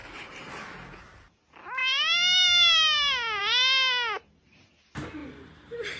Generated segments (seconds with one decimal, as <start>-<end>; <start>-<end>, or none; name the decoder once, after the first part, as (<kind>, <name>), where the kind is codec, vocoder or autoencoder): 5.2-6.0 (vocoder, BigVGAN v2)